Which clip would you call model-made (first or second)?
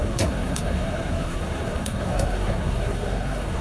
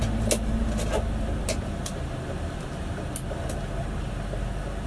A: first